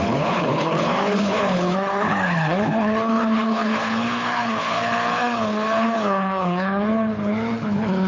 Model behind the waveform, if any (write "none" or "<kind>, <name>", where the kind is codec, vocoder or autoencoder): codec, HILCodec